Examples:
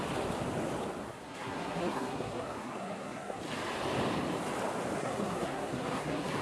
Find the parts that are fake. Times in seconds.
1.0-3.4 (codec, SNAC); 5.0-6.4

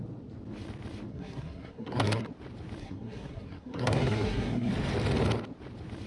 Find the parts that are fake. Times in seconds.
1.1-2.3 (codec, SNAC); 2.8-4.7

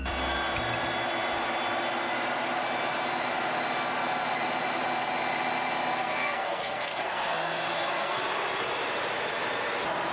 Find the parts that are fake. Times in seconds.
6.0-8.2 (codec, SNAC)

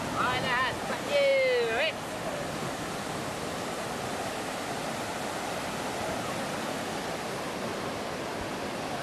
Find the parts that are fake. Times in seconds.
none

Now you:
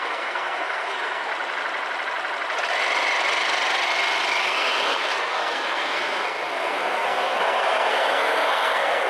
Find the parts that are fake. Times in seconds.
0.0-1.3 (codec, SNAC); 4.4-9.1